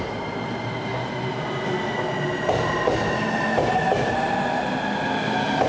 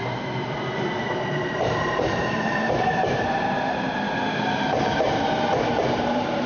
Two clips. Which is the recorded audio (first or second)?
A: first